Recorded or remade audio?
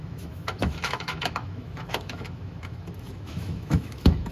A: remade